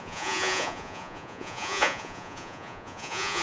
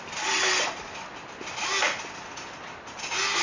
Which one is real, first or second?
second